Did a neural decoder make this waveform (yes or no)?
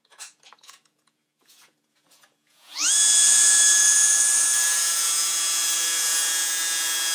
yes